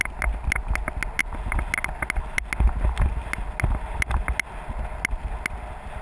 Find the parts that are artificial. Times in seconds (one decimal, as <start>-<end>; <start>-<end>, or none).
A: none